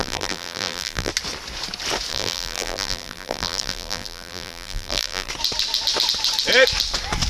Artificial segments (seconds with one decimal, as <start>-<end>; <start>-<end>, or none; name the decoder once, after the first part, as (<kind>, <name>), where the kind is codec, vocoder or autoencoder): 0.0-1.1 (vocoder, BigVGAN v2); 2.1-5.3